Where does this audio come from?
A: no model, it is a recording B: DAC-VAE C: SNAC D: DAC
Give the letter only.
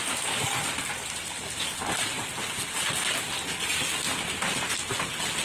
A